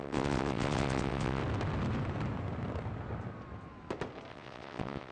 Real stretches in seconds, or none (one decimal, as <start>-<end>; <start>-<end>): 1.4-4.3